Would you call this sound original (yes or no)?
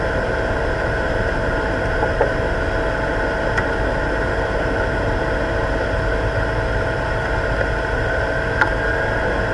yes